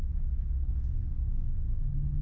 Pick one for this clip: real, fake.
real